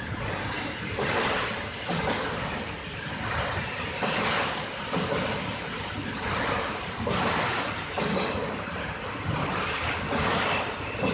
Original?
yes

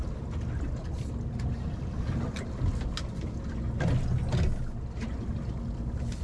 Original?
yes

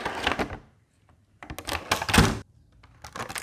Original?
yes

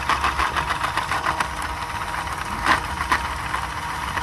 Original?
yes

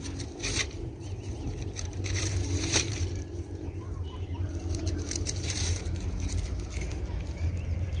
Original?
no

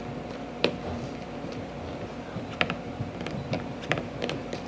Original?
no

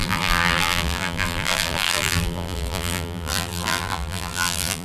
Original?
no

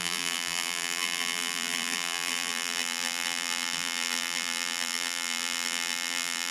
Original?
no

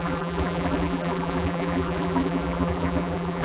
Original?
no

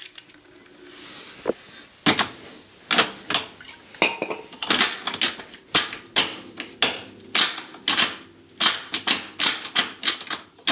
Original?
yes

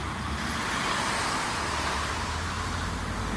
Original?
no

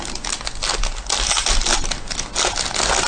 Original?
yes